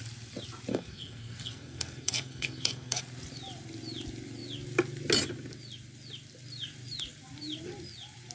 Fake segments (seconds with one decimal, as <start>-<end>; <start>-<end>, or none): 0.7-3.0